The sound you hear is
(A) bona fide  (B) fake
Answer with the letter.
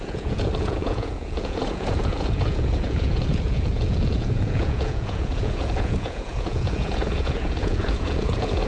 B